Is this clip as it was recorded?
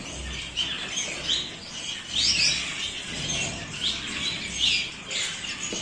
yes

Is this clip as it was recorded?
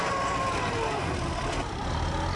yes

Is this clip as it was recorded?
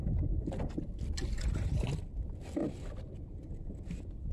yes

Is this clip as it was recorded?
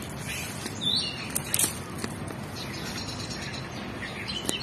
yes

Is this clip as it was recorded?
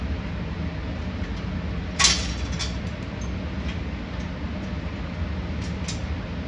yes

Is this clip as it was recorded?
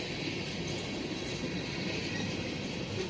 yes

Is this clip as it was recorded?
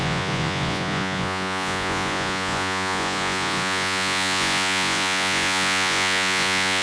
no